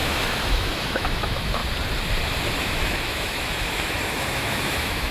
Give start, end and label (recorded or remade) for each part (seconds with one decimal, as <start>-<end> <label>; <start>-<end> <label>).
0.0-1.6 remade; 1.6-2.6 recorded; 2.6-5.1 remade